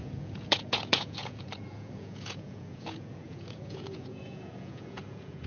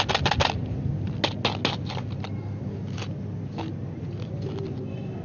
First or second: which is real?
second